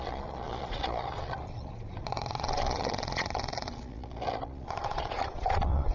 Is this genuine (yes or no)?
no